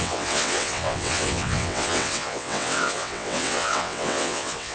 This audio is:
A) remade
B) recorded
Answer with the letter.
A